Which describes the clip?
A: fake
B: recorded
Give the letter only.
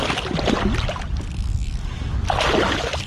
B